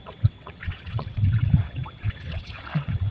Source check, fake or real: fake